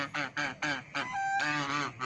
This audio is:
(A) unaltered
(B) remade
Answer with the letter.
A